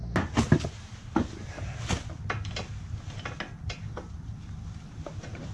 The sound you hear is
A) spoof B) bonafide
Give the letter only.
B